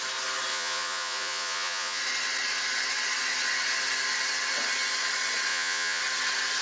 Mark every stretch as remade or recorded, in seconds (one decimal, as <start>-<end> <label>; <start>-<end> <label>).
0.0-0.5 recorded; 0.5-2.0 remade; 2.0-5.5 recorded; 5.5-6.0 remade; 6.0-6.6 recorded

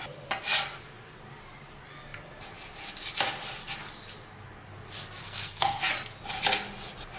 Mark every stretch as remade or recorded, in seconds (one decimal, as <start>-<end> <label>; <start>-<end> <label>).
0.0-5.2 recorded; 5.2-5.8 remade; 5.8-7.2 recorded

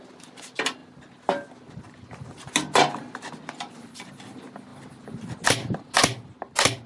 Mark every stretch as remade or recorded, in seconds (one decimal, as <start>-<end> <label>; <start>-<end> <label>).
0.0-6.9 recorded